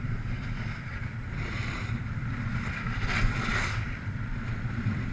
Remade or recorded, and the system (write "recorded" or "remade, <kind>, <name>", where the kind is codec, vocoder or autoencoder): remade, vocoder, BigVGAN v2